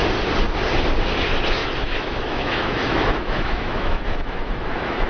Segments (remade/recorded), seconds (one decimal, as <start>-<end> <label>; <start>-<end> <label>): 0.0-1.6 recorded; 1.6-5.1 remade